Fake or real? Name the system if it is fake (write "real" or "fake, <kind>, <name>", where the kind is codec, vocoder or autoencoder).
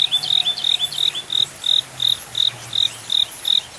real